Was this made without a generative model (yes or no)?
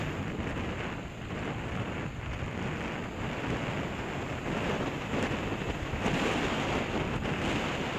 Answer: yes